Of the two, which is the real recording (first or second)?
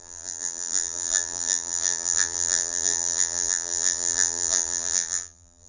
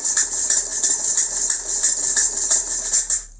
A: second